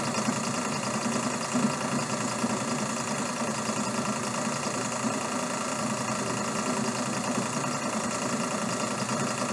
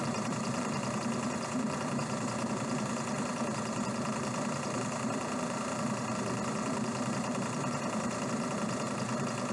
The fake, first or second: second